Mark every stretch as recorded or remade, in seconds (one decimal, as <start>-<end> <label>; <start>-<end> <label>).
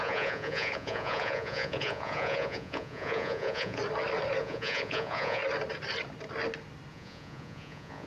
0.0-3.8 remade; 3.8-4.4 recorded; 4.4-5.4 remade; 5.4-6.9 recorded; 6.9-8.1 remade